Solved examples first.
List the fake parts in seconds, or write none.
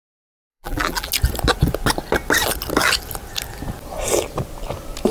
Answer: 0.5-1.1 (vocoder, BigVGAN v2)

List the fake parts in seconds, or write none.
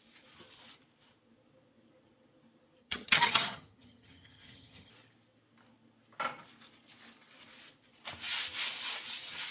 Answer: 2.8-4.9 (vocoder, HiFi-GAN)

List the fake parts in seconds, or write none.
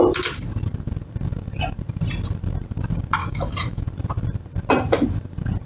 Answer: 3.2-3.8 (autoencoder, DAC-VAE)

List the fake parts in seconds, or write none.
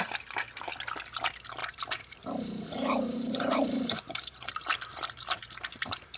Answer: 1.6-4.5 (vocoder, BigVGAN v2); 4.9-6.2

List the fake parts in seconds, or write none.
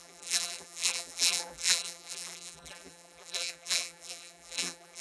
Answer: 0.0-5.0 (vocoder, BigVGAN v2)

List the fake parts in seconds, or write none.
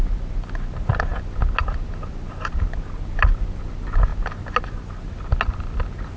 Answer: none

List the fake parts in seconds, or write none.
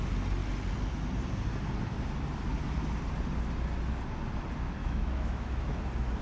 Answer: 4.8-5.8 (autoencoder, DAC-VAE)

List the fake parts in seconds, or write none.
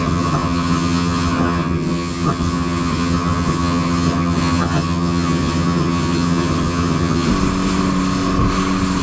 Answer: 0.0-7.3 (vocoder, HiFi-GAN)